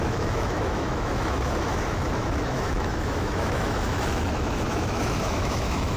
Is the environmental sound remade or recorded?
remade